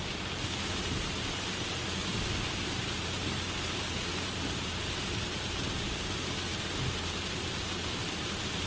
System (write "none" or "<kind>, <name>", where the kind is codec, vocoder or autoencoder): vocoder, BigVGAN v2